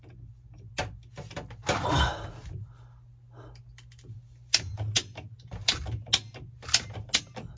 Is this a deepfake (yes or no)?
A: no